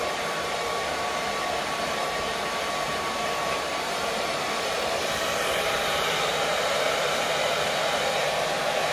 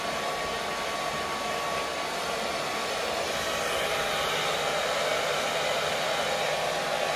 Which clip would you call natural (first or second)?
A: second